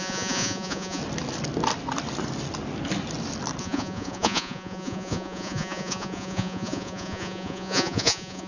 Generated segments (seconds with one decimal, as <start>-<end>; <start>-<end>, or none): 0.0-1.0; 3.6-8.5